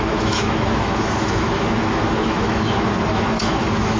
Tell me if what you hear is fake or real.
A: fake